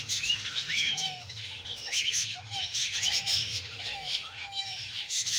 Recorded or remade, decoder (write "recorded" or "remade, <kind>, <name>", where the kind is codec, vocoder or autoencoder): remade, autoencoder, DAC-VAE